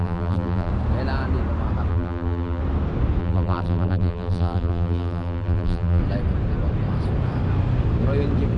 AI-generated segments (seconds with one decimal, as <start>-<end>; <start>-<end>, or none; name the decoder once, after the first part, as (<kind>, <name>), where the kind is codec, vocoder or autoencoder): 0.0-0.7 (vocoder, BigVGAN v2); 1.9-2.6; 3.2-6.0